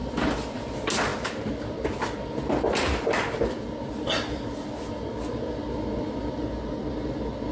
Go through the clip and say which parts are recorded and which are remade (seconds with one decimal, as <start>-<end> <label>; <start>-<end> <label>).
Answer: 0.0-0.6 remade; 0.6-7.5 recorded